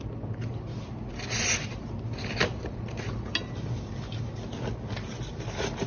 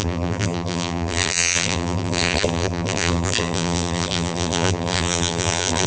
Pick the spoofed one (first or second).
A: second